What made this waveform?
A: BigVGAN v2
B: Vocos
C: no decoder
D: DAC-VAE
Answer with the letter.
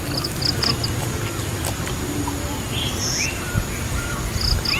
C